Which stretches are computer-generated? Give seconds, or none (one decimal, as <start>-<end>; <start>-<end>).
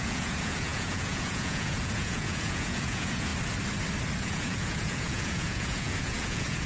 0.0-3.3; 4.2-6.7